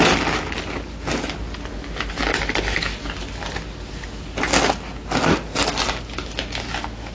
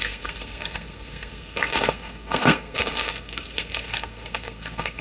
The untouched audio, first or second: first